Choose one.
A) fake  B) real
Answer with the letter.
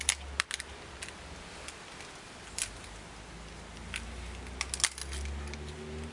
B